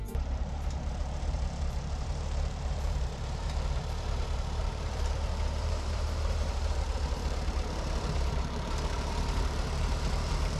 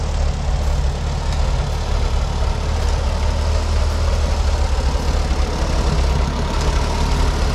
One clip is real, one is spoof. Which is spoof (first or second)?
first